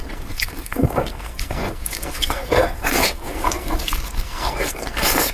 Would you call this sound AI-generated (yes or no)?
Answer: yes